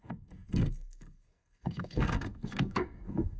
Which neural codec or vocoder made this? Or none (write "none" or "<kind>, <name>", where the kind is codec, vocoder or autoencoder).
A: codec, SNAC